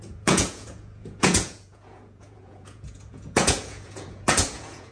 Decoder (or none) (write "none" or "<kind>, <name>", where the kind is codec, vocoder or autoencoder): vocoder, Vocos